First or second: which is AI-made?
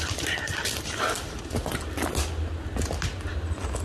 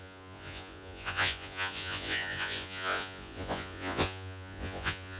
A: second